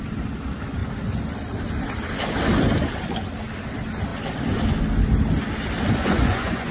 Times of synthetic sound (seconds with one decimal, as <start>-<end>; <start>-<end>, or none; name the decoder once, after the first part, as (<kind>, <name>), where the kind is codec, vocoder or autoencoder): 6.0-6.7 (vocoder, Vocos)